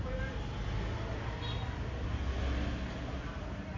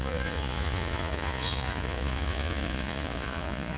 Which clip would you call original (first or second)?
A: first